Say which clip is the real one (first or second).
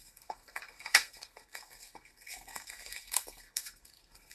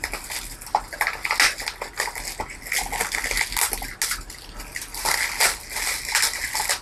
second